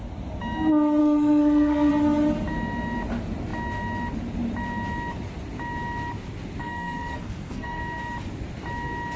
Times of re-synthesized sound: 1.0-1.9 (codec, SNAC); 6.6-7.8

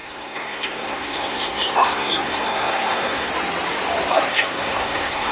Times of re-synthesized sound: 0.0-3.3 (codec, SNAC); 4.1-5.3

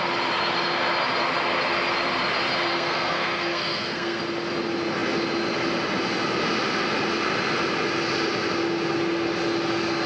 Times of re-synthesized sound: 2.7-4.2 (codec, SNAC)

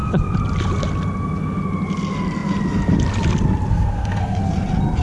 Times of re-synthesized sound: 3.7-4.4 (codec, SNAC)

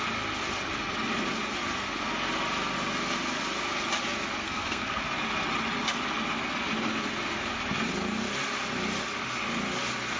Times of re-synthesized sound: 4.4-5.0 (codec, SNAC)